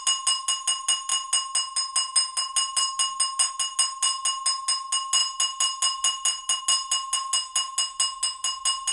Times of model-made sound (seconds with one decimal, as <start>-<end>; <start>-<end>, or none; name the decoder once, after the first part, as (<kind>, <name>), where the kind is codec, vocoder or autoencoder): none

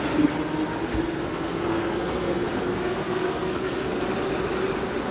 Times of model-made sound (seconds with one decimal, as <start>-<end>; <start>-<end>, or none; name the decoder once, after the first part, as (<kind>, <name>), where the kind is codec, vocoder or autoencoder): 0.9-4.0 (codec, SNAC)

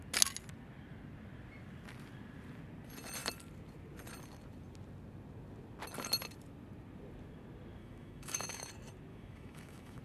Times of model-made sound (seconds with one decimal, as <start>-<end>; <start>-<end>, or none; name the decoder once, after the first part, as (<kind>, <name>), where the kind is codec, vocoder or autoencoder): 7.8-8.7 (autoencoder, DAC-VAE); 9.1-10.0